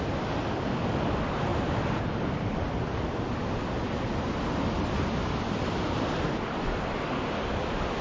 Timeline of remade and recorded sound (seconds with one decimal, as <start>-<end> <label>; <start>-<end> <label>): 0.0-8.0 recorded